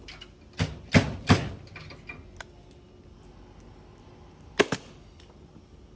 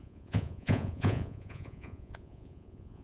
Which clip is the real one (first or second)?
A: first